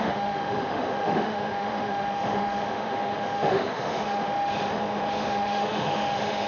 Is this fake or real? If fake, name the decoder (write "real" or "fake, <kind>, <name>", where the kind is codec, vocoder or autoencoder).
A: fake, autoencoder, DAC-VAE